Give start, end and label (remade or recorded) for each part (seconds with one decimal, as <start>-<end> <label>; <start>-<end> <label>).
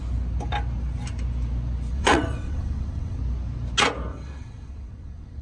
0.0-1.9 recorded; 1.9-3.2 remade; 3.2-4.1 recorded; 4.1-5.4 remade